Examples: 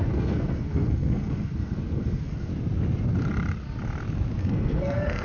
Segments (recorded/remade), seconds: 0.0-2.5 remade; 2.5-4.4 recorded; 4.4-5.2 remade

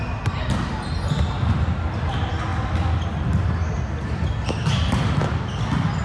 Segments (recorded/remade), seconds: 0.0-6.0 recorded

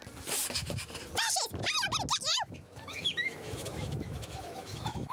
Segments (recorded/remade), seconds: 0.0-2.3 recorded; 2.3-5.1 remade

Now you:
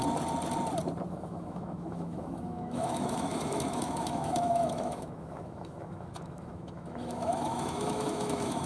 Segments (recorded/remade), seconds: 0.0-1.1 recorded; 1.1-8.7 remade

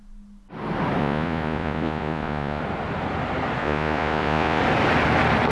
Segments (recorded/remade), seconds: 0.0-1.0 recorded; 1.0-2.6 remade; 2.6-3.6 recorded; 3.6-4.6 remade; 4.6-5.5 recorded